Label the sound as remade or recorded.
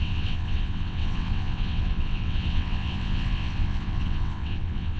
remade